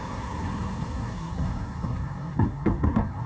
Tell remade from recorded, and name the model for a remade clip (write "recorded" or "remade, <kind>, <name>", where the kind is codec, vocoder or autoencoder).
remade, codec, SNAC